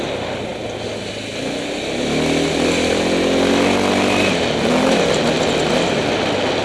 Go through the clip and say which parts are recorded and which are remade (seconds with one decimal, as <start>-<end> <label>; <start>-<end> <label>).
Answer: 0.0-6.6 recorded